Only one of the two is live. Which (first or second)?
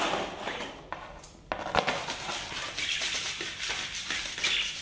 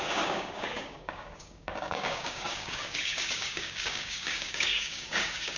first